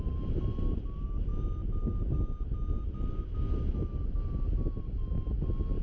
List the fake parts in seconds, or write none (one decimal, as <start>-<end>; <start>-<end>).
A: none